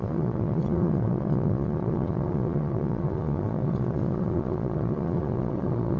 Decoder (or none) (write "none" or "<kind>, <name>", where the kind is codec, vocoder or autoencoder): vocoder, Vocos